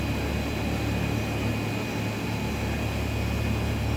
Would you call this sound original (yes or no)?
yes